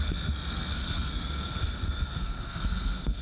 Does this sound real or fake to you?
fake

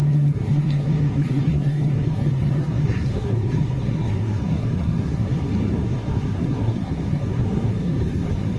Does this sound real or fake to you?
fake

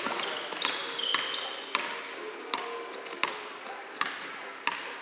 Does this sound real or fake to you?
real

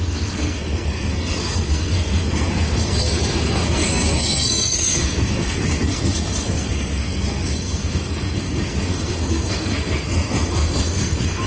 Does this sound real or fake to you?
fake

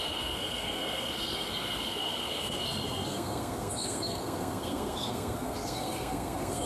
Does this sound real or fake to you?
fake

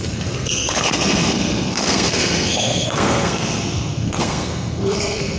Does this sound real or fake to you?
fake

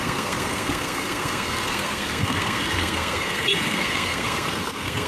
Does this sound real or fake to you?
fake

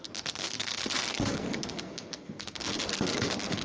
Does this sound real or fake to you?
fake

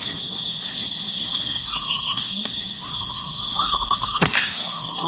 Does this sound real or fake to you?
fake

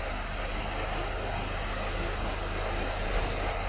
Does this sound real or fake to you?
real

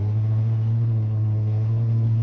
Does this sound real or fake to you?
fake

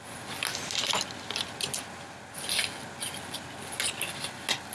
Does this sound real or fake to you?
real